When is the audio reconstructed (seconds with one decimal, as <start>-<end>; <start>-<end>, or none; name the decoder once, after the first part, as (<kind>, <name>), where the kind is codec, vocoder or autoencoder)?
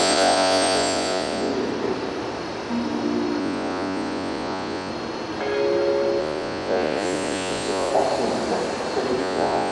0.0-1.5 (vocoder, Vocos); 3.4-4.9; 6.2-7.9; 9.2-9.7